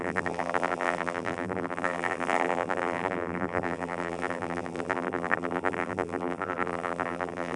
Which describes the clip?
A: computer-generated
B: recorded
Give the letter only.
A